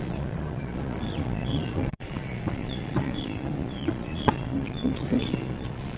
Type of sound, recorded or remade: remade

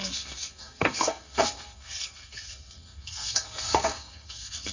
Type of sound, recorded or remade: remade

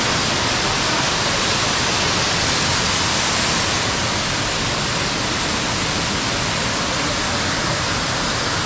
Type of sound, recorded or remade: recorded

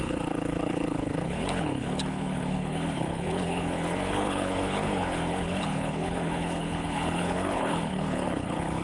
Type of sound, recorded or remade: remade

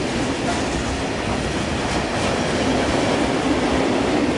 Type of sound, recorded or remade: recorded